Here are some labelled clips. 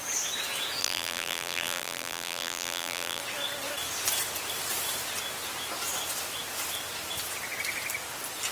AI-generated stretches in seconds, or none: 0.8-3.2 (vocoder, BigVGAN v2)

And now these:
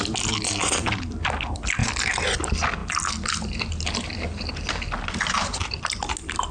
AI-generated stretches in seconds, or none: none

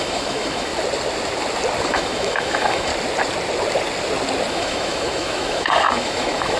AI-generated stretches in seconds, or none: 0.0-0.7 (autoencoder, DAC-VAE); 1.9-2.9; 4.5-6.6

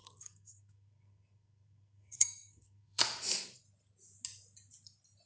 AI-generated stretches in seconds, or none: 0.0-3.0 (codec, SNAC)

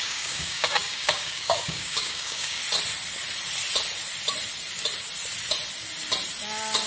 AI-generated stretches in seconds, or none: 0.0-2.6 (codec, DAC)

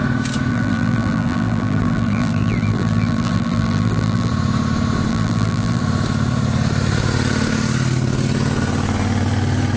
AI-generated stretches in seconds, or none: 0.5-4.3 (vocoder, BigVGAN v2); 5.1-5.8

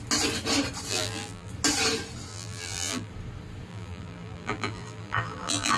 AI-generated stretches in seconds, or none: 0.9-1.5 (vocoder, BigVGAN v2); 2.3-3.1; 3.7-5.8